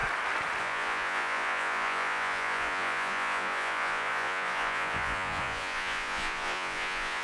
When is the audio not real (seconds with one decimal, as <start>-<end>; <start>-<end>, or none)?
0.6-7.2